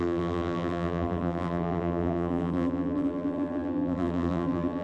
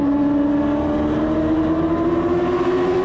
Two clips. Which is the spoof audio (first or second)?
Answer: first